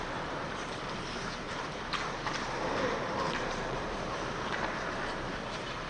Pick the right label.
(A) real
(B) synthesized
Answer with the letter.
B